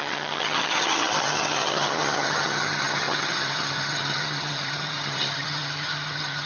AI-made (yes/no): yes